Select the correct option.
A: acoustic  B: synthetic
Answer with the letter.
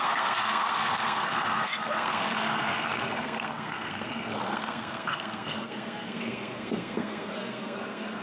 B